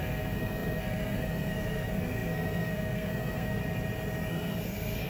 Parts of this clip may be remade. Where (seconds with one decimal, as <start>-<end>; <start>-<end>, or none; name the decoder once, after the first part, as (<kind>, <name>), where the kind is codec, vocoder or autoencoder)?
0.0-3.6 (codec, SNAC); 4.3-5.1